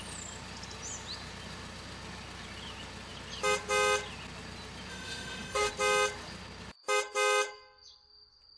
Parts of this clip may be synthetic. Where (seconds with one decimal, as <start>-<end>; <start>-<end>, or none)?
4.9-5.7